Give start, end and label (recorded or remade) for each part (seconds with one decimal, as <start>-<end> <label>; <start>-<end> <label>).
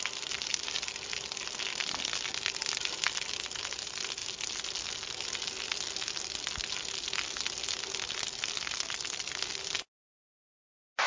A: 0.0-11.1 recorded